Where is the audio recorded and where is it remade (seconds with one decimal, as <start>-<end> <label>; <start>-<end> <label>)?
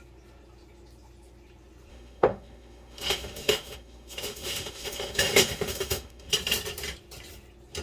0.0-1.9 recorded; 1.9-6.3 remade; 6.3-7.8 recorded